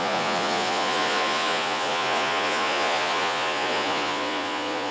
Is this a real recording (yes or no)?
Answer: no